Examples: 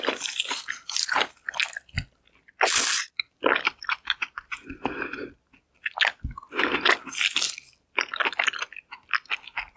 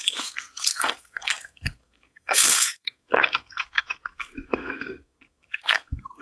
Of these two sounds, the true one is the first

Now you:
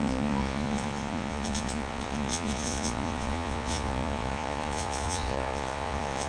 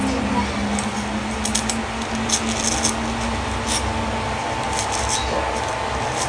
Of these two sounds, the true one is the second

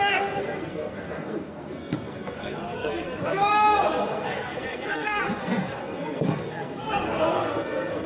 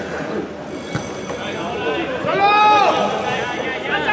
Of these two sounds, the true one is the second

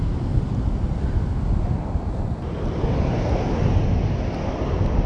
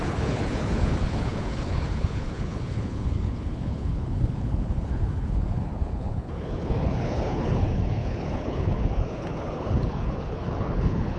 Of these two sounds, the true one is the first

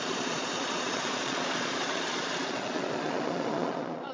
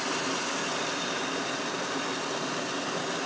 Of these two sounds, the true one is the second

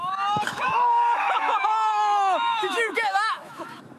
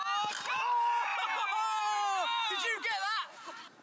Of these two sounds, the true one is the second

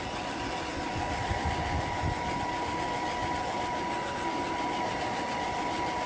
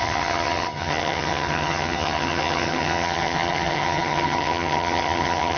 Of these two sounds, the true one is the first